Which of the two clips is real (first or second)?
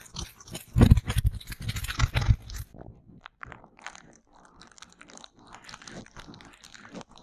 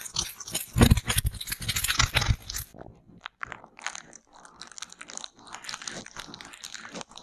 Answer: second